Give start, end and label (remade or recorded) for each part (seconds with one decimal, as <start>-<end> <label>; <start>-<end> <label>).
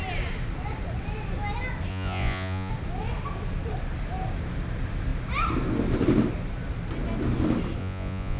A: 0.0-1.9 recorded; 1.9-2.7 remade; 2.7-7.8 recorded; 7.8-8.4 remade